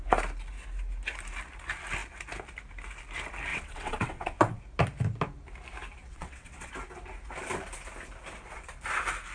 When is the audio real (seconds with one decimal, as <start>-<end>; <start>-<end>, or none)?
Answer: 0.0-3.5; 4.6-6.0; 6.7-9.3